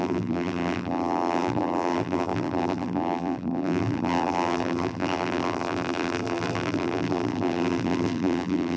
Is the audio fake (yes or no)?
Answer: yes